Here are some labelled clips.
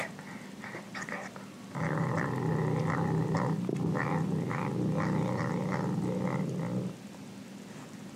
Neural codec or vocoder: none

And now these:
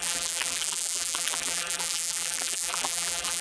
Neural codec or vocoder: vocoder, BigVGAN v2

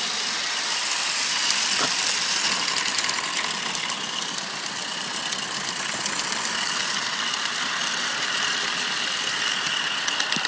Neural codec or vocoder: none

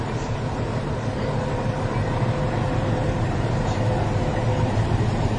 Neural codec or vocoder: vocoder, BigVGAN v2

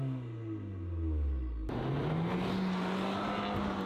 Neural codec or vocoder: none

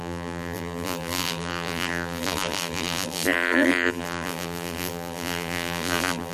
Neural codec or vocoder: vocoder, BigVGAN v2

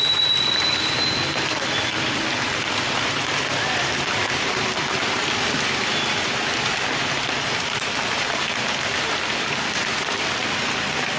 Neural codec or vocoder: vocoder, BigVGAN v2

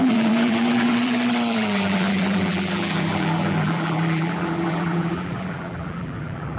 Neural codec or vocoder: vocoder, BigVGAN v2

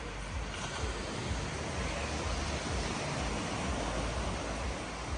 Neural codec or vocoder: none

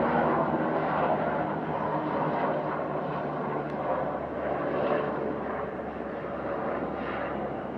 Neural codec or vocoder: vocoder, BigVGAN v2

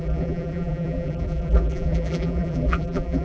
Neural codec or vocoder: vocoder, BigVGAN v2